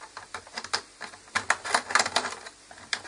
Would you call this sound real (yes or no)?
yes